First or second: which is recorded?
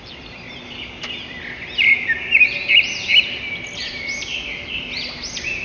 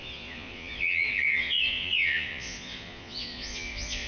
first